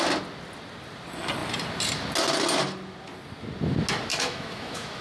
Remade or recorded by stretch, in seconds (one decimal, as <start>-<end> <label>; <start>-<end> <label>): 0.0-4.1 recorded; 4.1-5.0 remade